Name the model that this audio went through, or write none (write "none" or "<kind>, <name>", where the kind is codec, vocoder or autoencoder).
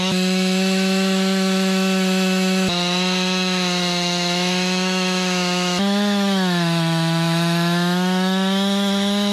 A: autoencoder, DAC-VAE